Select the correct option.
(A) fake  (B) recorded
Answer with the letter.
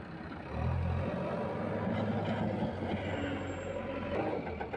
B